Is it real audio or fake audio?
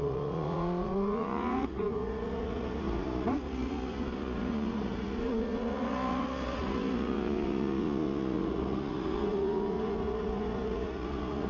fake